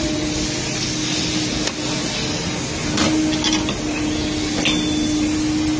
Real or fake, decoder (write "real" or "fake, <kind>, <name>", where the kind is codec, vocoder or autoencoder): real